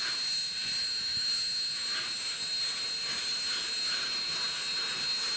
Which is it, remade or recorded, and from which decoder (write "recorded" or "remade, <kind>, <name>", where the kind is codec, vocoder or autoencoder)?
recorded